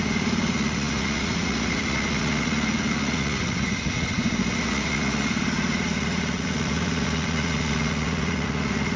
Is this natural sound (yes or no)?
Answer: no